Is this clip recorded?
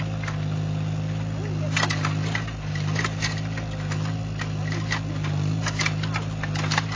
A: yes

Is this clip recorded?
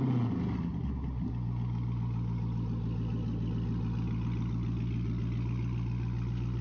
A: yes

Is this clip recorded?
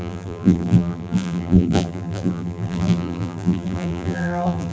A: no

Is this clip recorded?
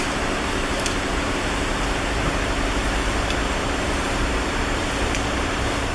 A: no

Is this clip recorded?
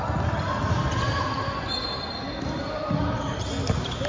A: yes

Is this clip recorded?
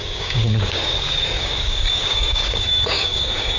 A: no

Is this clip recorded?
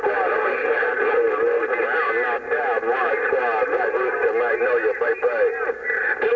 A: yes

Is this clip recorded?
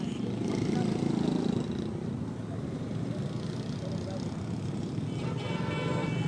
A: yes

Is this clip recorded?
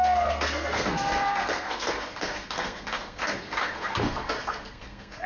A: no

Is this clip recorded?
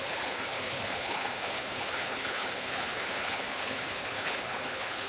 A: no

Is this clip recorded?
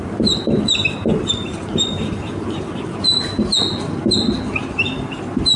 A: yes